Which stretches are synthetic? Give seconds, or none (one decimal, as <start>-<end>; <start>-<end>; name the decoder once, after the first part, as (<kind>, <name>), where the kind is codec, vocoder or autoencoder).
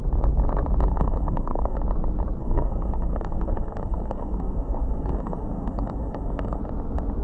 0.9-1.8 (codec, SNAC); 2.4-6.6